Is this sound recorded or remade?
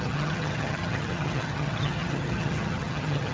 remade